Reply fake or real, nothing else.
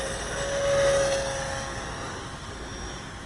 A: real